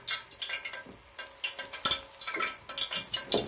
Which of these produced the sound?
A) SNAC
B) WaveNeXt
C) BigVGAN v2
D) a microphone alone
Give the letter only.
D